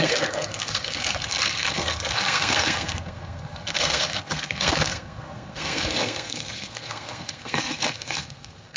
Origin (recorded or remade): remade